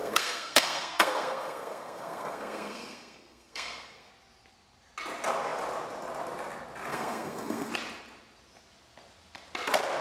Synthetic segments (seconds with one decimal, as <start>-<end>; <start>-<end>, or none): 0.0-4.1; 6.9-7.7